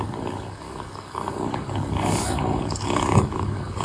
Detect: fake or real fake